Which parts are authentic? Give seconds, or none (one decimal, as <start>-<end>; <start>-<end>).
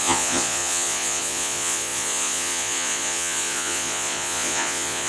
none